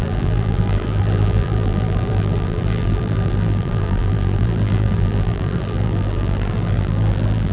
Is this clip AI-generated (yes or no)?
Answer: yes